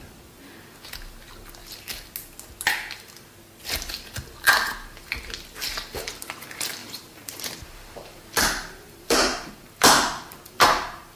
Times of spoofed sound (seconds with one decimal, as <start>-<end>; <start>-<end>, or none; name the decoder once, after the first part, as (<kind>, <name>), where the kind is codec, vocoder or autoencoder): 6.8-9.5 (vocoder, BigVGAN v2)